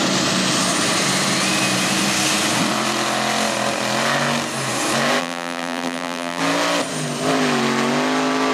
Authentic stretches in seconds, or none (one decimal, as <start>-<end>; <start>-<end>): 0.0-5.2; 6.4-8.5